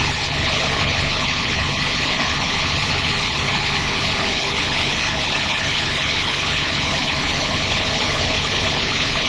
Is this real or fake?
fake